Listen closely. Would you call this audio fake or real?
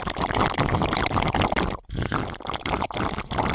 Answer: real